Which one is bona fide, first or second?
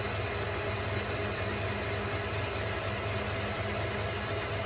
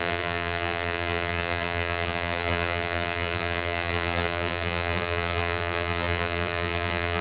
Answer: first